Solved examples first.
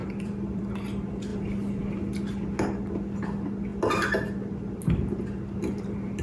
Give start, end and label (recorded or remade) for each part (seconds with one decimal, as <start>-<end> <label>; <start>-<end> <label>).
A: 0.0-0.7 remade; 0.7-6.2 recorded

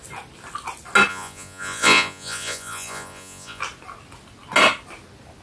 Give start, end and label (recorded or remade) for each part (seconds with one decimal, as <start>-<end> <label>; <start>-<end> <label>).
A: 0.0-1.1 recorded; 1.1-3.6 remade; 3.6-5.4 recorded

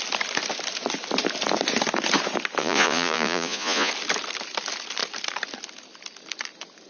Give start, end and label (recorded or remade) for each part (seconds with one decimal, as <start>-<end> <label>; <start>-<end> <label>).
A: 0.0-2.6 recorded; 2.6-3.9 remade; 3.9-6.9 recorded

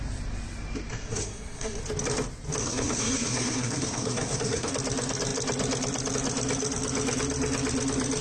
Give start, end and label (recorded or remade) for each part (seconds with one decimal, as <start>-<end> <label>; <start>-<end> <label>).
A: 0.0-0.9 recorded; 0.9-1.8 remade; 1.8-2.6 recorded; 2.6-4.7 remade; 4.7-8.2 recorded

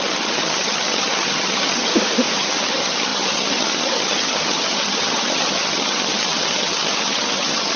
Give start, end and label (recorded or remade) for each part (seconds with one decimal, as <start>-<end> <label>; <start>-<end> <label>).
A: 0.0-1.9 remade; 1.9-2.4 recorded; 2.4-7.8 remade

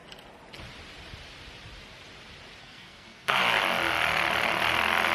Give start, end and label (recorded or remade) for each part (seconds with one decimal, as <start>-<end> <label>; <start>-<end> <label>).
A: 0.0-2.6 recorded; 2.6-3.4 remade; 3.4-5.1 recorded

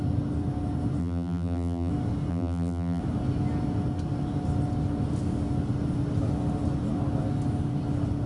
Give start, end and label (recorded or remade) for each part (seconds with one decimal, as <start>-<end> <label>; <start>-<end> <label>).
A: 0.0-1.0 recorded; 1.0-1.9 remade; 1.9-2.3 recorded; 2.3-3.0 remade; 3.0-8.3 recorded